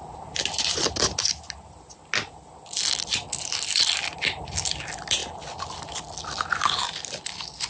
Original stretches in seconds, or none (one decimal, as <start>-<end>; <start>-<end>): 0.0-7.7